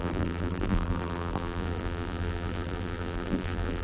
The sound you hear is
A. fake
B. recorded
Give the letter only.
A